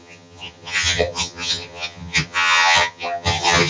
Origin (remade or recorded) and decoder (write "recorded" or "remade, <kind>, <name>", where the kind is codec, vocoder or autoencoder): remade, vocoder, HiFi-GAN